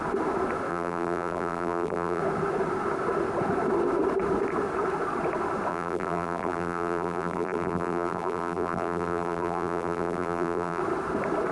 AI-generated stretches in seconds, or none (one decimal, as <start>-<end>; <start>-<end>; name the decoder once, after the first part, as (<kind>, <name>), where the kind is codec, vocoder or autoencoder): 0.7-2.2 (vocoder, BigVGAN v2); 5.7-10.8